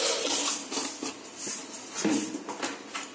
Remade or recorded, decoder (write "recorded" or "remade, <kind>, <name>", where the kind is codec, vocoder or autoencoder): recorded